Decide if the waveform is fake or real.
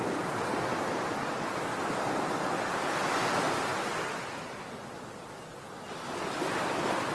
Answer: fake